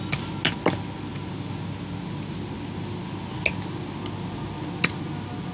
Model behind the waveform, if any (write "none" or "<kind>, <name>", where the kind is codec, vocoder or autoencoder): none